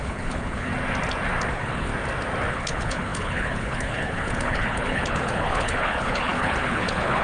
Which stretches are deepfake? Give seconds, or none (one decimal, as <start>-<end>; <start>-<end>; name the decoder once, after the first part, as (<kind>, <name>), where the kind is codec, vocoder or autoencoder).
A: 0.0-0.7 (codec, HILCodec); 1.5-1.9; 2.5-7.2